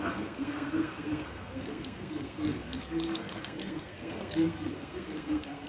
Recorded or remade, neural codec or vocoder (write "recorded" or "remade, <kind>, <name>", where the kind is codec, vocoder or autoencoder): remade, codec, SNAC